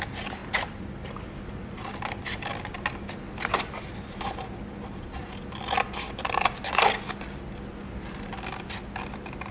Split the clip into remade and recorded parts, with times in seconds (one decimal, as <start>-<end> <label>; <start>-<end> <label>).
0.0-0.4 recorded; 0.4-2.2 remade; 2.2-5.2 recorded; 5.2-6.5 remade; 6.5-9.5 recorded